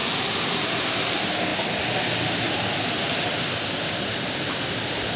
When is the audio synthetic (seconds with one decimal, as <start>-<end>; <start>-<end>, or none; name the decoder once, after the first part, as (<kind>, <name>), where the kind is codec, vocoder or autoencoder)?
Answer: none